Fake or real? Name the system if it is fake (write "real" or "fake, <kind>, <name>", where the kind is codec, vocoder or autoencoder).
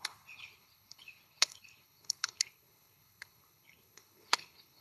fake, codec, HILCodec